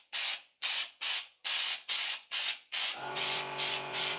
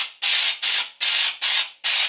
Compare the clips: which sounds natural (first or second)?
second